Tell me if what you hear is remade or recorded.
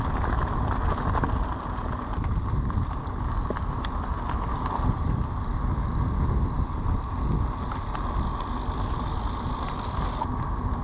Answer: recorded